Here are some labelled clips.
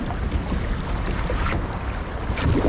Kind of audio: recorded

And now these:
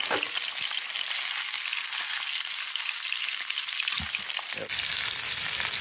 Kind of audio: recorded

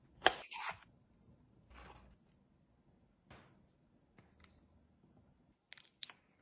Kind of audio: recorded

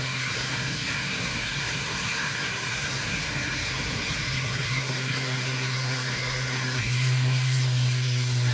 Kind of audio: remade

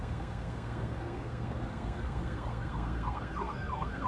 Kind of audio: remade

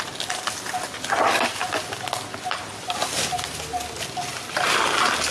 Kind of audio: recorded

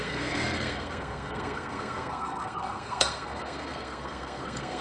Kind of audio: remade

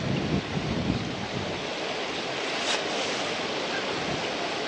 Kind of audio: recorded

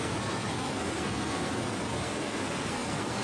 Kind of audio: remade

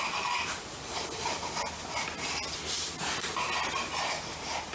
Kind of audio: recorded